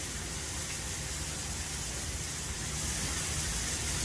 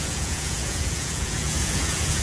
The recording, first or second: first